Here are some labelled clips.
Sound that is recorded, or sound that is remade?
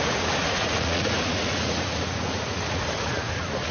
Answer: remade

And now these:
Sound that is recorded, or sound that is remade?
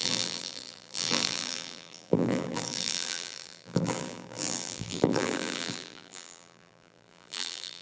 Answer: remade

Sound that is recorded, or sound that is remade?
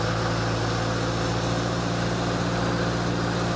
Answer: recorded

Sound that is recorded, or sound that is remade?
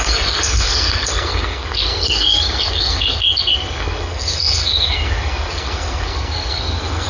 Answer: remade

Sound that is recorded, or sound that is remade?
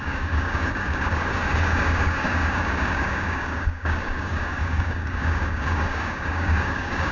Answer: remade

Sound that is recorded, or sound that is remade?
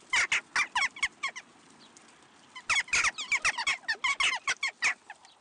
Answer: recorded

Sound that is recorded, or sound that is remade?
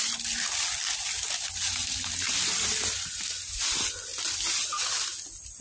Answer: recorded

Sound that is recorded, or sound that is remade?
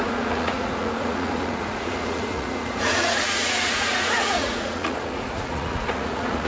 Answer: remade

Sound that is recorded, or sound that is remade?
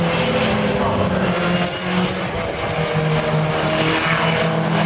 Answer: recorded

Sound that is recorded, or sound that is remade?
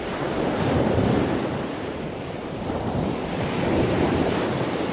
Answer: remade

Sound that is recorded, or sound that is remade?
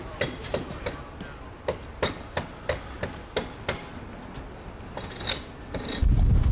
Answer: recorded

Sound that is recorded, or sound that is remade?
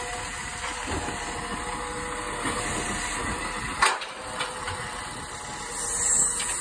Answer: recorded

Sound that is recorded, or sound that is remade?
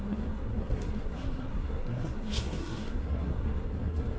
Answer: remade